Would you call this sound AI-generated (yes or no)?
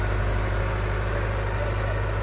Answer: no